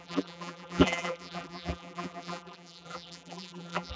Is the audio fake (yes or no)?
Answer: yes